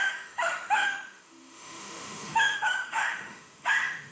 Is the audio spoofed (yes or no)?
yes